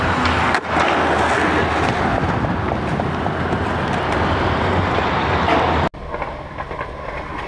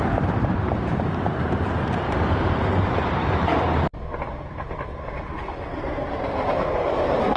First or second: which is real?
first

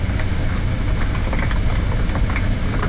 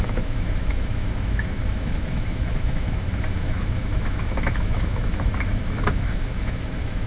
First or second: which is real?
first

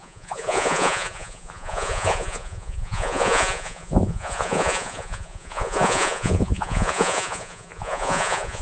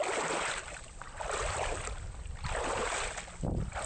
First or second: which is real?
second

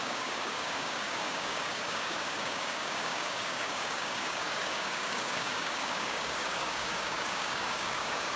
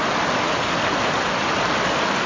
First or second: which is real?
second